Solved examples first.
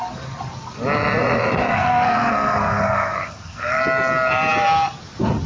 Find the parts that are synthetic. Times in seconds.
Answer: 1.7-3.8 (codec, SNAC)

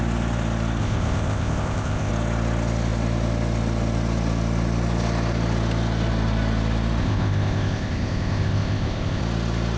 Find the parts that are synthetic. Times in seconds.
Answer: 0.8-2.1 (codec, ZipCodec); 7.0-9.2